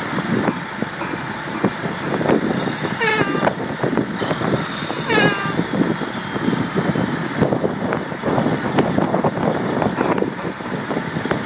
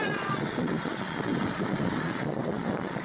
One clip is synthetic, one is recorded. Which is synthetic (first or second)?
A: second